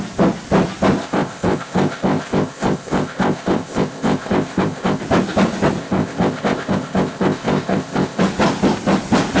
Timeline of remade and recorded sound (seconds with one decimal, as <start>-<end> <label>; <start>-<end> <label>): 0.0-1.0 recorded; 1.0-5.0 remade; 5.0-5.8 recorded; 5.8-8.2 remade; 8.2-9.4 recorded